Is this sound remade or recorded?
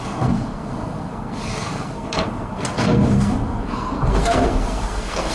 remade